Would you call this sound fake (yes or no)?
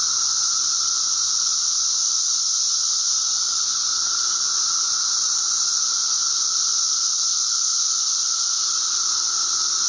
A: yes